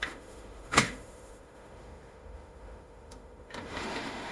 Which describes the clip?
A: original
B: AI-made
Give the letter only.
B